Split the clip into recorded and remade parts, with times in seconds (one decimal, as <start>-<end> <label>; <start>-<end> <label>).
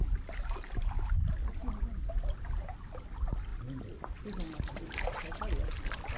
0.0-6.2 recorded